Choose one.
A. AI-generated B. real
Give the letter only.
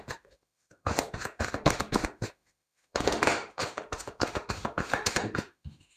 A